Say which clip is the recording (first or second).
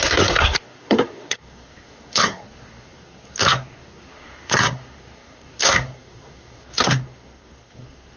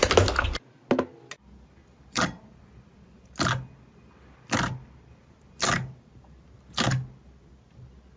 second